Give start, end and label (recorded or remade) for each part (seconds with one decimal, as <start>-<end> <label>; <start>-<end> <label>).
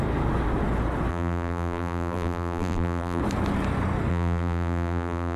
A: 0.0-1.1 recorded; 1.1-3.2 remade; 3.2-4.1 recorded; 4.1-5.4 remade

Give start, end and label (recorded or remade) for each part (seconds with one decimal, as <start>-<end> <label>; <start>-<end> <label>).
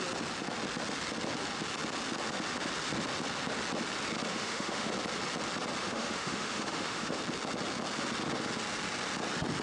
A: 0.0-4.3 recorded; 4.3-4.9 remade; 4.9-5.8 recorded; 5.8-7.2 remade; 7.2-9.6 recorded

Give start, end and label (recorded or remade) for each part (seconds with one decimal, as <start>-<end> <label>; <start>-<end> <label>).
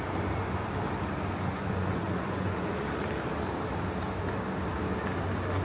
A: 0.0-1.5 recorded; 1.5-3.0 remade; 3.0-5.6 recorded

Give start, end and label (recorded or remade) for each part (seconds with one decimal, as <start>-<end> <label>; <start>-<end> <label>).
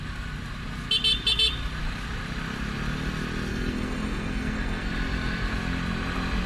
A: 0.0-3.5 recorded; 3.5-4.9 remade; 4.9-6.5 recorded